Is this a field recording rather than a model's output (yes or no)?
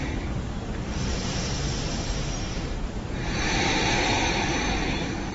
no